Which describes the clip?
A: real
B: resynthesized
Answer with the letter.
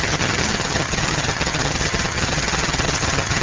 B